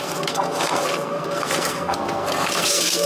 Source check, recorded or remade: remade